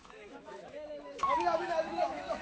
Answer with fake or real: fake